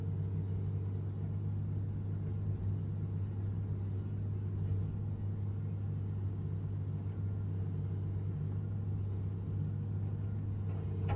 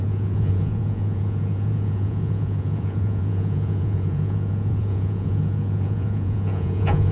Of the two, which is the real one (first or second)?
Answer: first